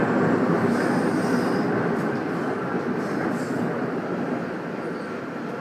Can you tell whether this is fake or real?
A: real